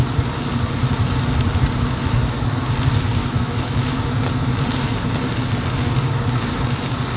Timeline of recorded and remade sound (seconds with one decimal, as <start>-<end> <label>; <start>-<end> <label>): 0.0-3.2 recorded; 3.2-4.0 remade; 4.0-7.2 recorded